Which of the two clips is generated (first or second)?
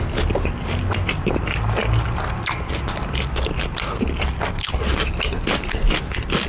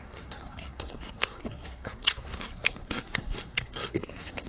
second